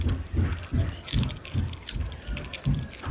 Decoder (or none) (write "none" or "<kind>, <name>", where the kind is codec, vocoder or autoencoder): none